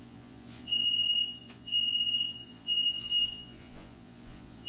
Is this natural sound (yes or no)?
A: no